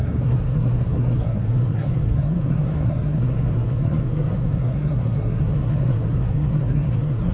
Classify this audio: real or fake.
fake